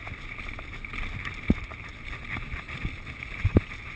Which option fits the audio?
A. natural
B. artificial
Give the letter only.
A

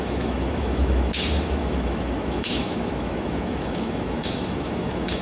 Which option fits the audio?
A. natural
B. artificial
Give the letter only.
B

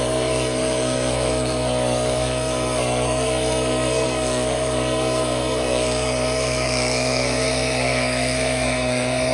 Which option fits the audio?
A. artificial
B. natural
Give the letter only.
A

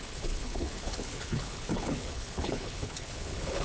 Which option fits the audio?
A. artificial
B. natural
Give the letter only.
A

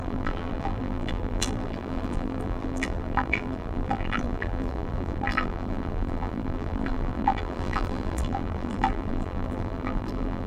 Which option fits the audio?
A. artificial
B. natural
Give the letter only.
A